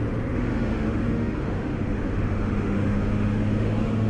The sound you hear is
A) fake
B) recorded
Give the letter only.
A